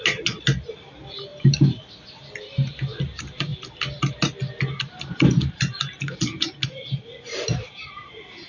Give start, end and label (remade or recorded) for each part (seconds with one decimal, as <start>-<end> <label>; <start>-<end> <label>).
0.0-1.3 recorded; 1.3-1.8 remade; 1.8-7.3 recorded; 7.3-8.5 remade